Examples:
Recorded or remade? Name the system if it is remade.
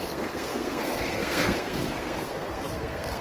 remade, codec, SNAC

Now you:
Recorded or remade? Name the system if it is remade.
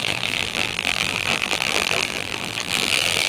remade, vocoder, BigVGAN v2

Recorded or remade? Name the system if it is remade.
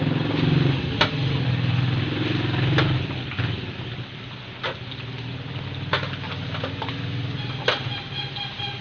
recorded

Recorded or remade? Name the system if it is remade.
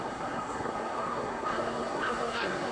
remade, codec, SNAC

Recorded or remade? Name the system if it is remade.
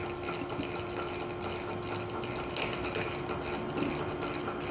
recorded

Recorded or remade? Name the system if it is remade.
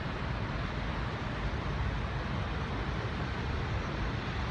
recorded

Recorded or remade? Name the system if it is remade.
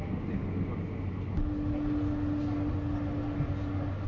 recorded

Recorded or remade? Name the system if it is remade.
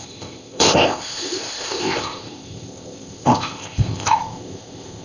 remade, codec, ZipCodec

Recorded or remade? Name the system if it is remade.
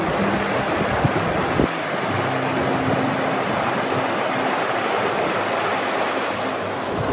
recorded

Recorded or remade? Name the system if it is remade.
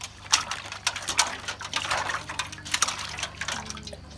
recorded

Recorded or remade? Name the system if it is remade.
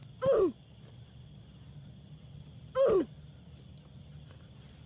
recorded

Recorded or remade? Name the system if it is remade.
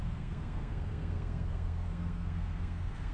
remade, codec, SNAC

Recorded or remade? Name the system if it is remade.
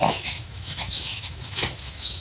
remade, autoencoder, DAC-VAE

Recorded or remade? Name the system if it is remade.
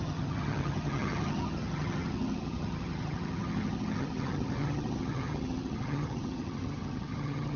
remade, vocoder, HiFi-GAN